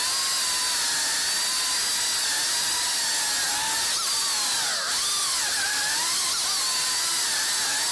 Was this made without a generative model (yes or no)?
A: yes